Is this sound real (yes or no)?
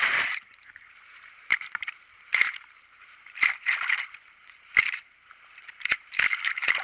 no